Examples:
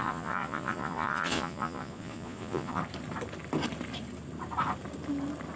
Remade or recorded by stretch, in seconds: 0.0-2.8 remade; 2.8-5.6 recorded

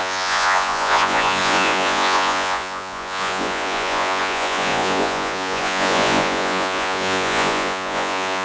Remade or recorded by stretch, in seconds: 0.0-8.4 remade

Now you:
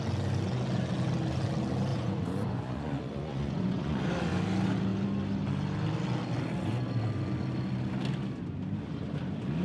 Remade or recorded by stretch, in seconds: 0.0-1.9 recorded; 1.9-4.1 remade; 4.1-9.6 recorded

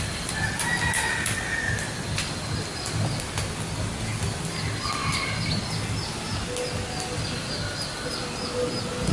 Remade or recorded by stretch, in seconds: 0.0-9.1 recorded

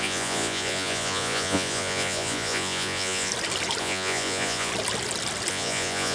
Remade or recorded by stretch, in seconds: 0.0-3.3 remade; 3.3-3.8 recorded; 3.8-4.7 remade; 4.7-5.5 recorded; 5.5-6.1 remade

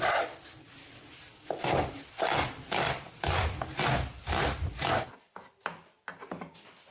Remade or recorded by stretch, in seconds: 0.0-6.9 recorded

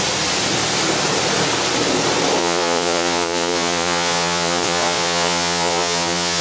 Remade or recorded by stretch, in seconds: 0.0-2.4 recorded; 2.4-6.4 remade

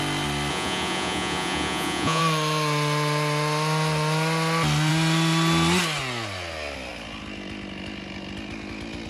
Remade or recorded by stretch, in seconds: 0.0-0.5 recorded; 0.5-2.2 remade; 2.2-9.1 recorded